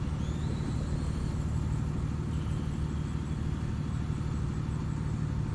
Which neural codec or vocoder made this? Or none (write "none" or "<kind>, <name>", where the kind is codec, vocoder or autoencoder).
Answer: none